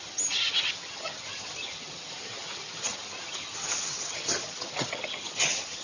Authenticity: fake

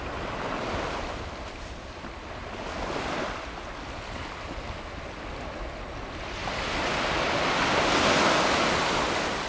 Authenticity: real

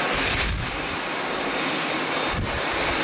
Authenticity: real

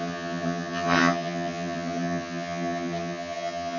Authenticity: fake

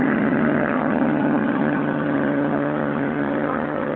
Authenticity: fake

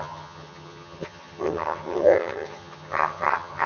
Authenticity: fake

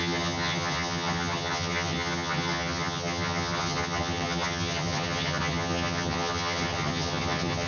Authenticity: fake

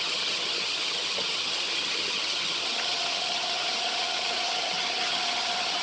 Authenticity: fake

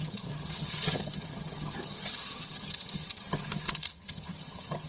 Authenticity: fake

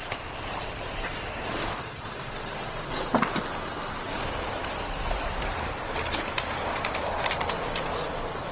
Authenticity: real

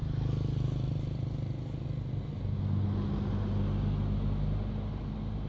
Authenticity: real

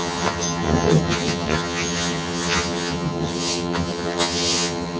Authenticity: fake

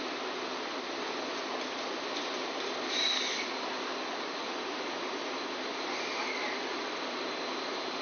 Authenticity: real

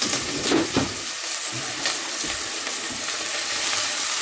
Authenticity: real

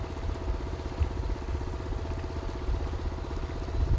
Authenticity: real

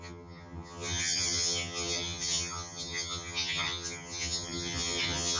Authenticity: fake